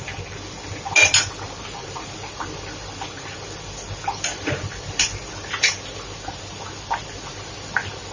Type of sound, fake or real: real